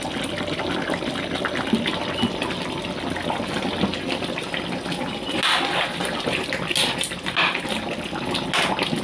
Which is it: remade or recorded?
recorded